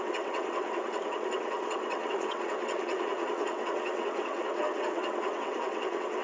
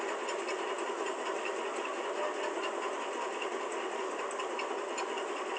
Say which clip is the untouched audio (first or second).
second